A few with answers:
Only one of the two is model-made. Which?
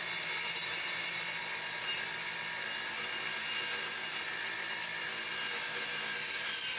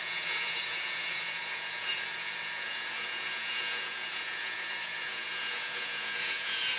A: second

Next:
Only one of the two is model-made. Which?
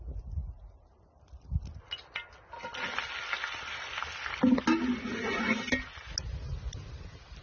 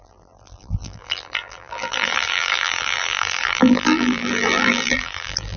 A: second